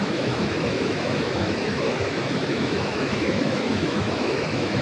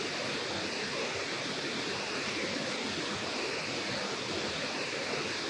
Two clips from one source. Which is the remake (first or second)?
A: first